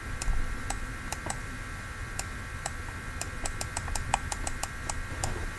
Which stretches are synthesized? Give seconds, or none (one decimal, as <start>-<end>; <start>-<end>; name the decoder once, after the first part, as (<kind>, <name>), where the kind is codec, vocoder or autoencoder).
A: 0.0-5.6 (vocoder, BigVGAN v2)